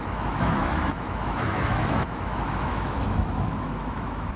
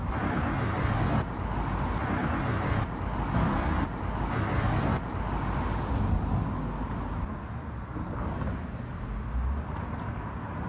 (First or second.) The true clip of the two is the second